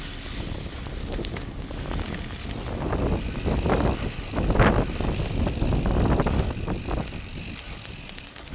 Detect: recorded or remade recorded